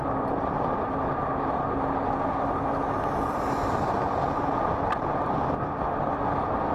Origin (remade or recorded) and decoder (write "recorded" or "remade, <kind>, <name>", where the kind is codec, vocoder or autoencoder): recorded